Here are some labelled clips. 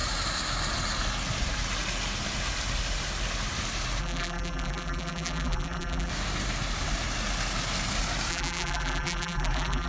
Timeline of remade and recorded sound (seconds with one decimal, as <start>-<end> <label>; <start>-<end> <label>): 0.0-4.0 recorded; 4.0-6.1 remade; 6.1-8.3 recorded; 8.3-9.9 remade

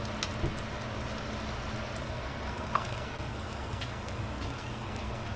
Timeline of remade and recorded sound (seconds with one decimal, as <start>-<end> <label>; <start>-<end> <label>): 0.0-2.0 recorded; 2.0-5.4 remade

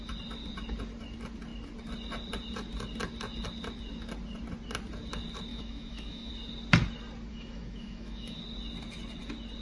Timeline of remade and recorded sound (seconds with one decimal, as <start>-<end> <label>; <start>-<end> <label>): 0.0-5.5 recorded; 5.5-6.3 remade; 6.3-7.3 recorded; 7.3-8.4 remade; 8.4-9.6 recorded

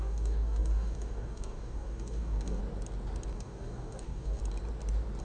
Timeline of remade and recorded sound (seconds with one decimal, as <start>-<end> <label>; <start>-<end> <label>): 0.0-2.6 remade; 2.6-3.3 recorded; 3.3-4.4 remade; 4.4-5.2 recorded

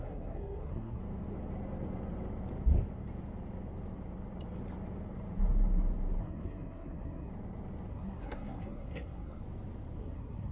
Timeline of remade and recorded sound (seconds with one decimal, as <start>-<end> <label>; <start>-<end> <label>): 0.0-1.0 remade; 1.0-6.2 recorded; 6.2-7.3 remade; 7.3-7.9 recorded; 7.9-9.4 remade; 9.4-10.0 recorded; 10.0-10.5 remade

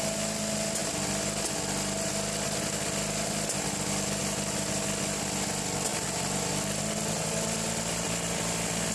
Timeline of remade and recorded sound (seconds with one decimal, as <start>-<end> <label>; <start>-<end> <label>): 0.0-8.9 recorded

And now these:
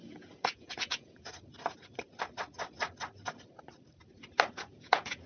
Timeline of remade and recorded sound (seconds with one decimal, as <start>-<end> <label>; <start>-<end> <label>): 0.0-1.3 remade; 1.3-4.5 recorded; 4.5-5.3 remade